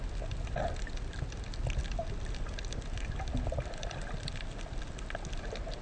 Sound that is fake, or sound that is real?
real